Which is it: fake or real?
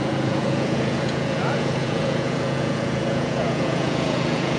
fake